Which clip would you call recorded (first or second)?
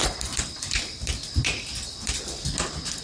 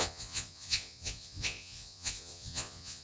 first